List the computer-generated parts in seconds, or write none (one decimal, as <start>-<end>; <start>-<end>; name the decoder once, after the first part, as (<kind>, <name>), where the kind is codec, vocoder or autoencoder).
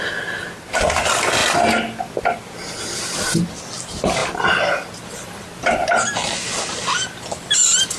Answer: none